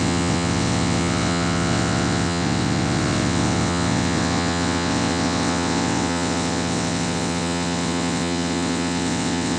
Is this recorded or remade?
remade